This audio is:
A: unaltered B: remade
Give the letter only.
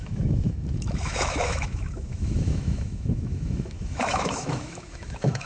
B